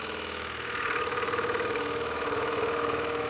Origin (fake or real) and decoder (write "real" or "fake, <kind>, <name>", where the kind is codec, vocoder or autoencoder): fake, autoencoder, DAC-VAE